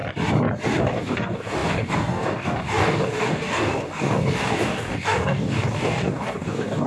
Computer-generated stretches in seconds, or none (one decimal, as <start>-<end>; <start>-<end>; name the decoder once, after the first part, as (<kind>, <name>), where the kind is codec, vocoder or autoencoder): 0.8-6.9 (codec, DAC)